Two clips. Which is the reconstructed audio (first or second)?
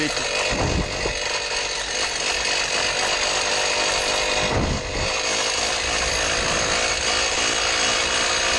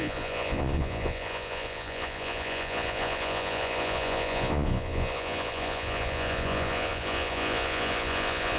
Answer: second